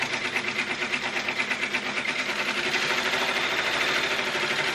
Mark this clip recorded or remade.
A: recorded